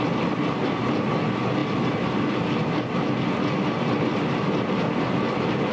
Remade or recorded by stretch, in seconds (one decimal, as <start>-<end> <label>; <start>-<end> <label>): 0.0-5.7 recorded